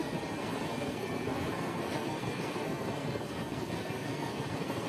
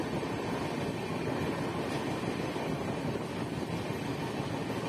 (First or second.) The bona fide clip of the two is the second